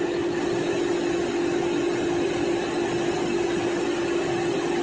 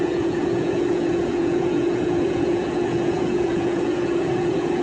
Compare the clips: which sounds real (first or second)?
first